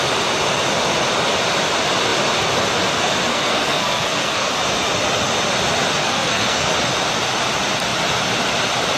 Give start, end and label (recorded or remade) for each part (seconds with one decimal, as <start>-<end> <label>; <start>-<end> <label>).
0.0-3.3 recorded; 3.3-4.5 remade; 4.5-6.0 recorded; 6.0-6.7 remade; 6.7-9.0 recorded